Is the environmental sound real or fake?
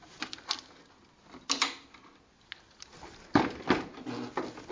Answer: real